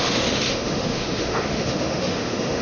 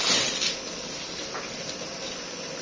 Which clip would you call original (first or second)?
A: second